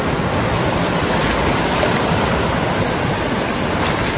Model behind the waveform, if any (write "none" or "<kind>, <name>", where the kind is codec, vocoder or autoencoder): none